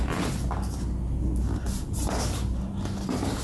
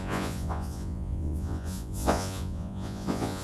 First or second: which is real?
first